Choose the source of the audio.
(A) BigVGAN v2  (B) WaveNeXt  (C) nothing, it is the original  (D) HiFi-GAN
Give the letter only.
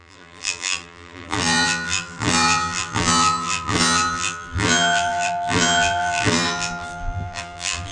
A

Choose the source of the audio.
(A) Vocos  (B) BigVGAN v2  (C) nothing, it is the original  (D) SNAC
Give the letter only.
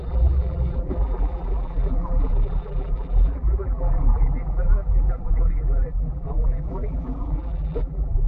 B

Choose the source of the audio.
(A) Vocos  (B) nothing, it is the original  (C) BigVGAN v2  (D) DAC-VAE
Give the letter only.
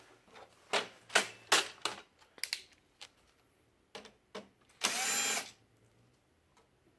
B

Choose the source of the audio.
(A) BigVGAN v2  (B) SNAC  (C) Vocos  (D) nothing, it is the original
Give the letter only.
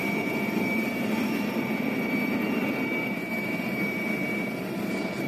A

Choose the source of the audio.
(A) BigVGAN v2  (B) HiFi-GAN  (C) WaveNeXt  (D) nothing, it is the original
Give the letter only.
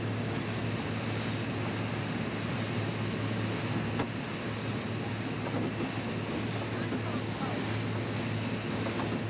D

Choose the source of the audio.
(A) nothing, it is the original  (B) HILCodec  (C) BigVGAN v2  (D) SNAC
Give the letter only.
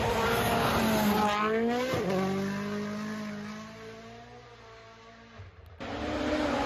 A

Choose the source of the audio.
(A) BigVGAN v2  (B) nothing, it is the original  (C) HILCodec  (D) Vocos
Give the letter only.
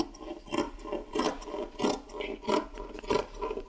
B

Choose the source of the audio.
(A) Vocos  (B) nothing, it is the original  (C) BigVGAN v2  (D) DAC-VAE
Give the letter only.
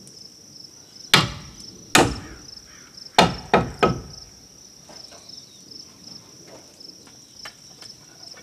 B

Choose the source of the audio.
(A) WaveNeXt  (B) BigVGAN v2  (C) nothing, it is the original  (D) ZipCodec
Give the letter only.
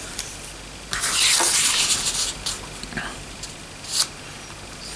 C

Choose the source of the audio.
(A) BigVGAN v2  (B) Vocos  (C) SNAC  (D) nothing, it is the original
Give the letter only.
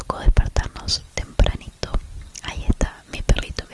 D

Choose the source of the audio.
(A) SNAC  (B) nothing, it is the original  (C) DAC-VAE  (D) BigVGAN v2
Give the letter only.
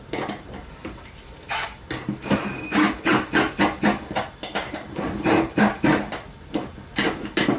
B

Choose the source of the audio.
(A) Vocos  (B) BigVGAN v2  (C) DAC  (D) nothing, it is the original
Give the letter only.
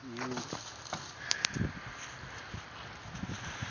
D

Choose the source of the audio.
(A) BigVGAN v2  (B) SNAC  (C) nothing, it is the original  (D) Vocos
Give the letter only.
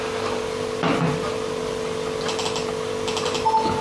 C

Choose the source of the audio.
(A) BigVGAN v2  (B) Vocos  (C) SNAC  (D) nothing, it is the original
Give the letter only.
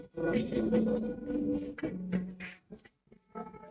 D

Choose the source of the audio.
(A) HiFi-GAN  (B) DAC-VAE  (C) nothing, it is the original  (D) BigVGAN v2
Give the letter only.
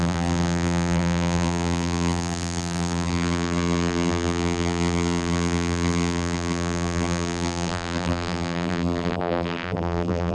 D